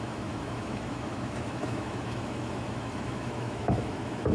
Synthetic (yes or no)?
yes